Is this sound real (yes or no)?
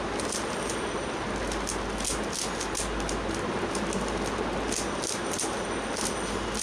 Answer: yes